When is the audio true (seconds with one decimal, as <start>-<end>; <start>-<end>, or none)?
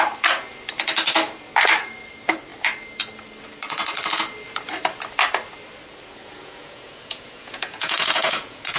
0.0-6.2